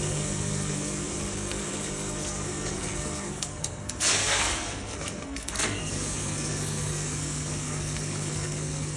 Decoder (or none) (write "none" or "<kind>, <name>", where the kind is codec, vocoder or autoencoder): codec, SNAC